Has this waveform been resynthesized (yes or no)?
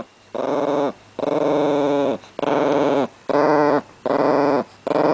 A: no